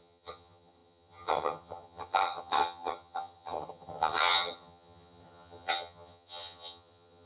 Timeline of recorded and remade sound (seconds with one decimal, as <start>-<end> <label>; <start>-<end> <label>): 0.0-7.3 remade